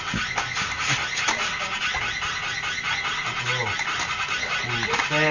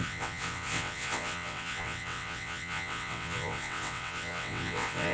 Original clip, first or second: first